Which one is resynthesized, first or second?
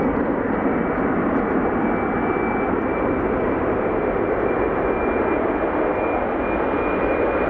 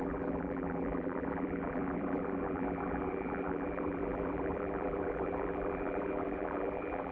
second